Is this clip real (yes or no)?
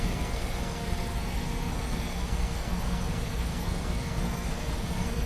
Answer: no